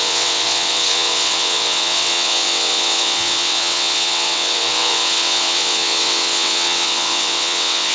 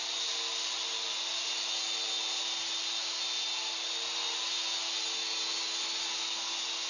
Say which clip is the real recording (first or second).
second